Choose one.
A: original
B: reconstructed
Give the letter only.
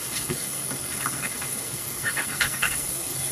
B